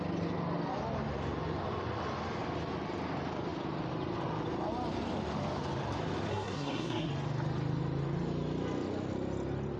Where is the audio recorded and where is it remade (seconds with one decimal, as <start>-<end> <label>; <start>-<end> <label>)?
0.0-6.3 recorded; 6.3-7.1 remade; 7.1-9.8 recorded